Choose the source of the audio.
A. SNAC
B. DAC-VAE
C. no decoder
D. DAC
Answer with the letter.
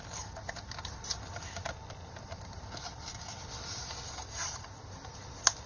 C